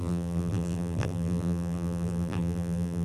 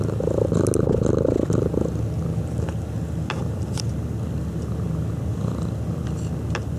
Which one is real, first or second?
second